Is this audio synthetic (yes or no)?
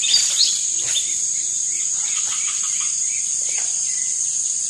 no